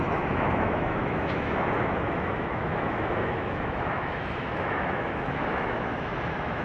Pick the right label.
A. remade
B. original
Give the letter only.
A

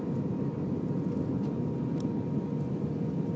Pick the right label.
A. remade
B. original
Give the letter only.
B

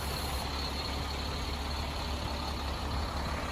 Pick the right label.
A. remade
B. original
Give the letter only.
B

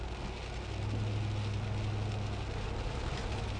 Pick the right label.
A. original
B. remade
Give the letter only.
A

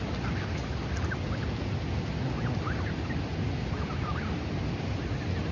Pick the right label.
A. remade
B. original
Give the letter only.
B